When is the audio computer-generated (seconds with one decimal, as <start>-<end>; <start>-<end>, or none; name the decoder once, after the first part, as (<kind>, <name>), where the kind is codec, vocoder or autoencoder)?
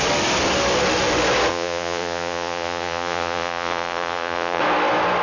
1.5-4.6 (vocoder, Vocos)